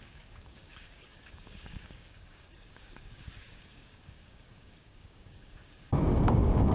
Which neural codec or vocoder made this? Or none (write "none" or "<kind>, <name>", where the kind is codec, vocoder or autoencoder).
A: codec, DAC